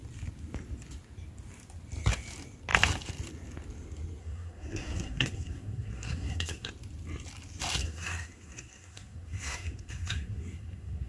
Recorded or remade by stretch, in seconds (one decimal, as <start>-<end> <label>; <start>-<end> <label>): 0.0-4.2 recorded; 4.2-6.7 remade; 6.7-7.8 recorded; 7.8-11.1 remade

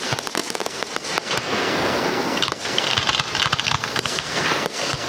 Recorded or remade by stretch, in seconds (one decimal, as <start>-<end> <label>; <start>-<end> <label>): 0.0-3.0 remade; 3.0-3.6 recorded; 3.6-5.1 remade

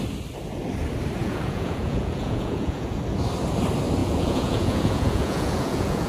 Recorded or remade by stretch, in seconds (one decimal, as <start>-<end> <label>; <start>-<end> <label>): 0.0-1.2 recorded; 1.2-3.0 remade; 3.0-4.0 recorded; 4.0-6.1 remade